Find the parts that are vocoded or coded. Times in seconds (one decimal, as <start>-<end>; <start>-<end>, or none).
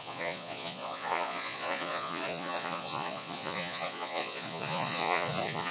0.0-5.7